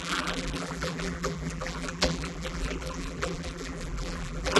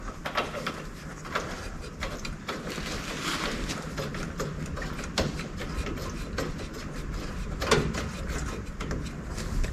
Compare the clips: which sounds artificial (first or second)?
first